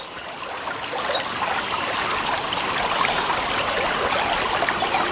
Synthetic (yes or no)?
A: no